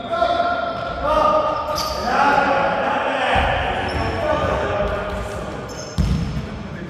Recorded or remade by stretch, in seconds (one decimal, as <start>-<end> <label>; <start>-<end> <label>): 0.0-4.3 recorded; 4.3-4.8 remade; 4.8-6.9 recorded